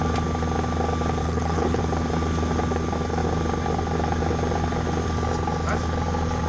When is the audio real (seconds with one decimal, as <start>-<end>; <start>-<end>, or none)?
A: 0.0-1.2; 1.8-6.5